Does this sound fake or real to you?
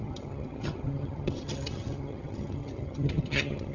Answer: fake